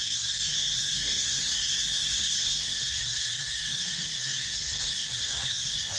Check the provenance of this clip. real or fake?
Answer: fake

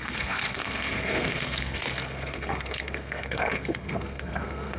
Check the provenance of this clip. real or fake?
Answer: fake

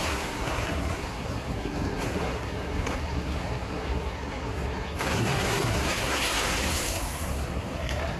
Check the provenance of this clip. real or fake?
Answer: fake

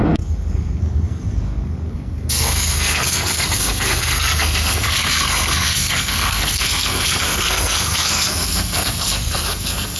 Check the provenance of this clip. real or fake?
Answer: fake